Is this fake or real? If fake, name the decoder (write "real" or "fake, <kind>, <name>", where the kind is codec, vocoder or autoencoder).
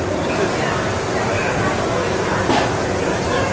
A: real